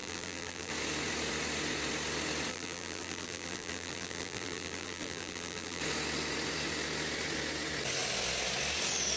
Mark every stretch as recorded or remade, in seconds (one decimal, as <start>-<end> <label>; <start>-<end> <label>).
0.0-0.7 remade; 0.7-2.5 recorded; 2.5-5.8 remade; 5.8-9.2 recorded